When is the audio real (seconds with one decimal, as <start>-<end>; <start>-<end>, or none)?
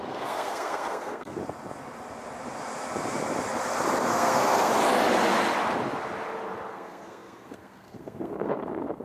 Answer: 1.4-4.1; 4.7-6.7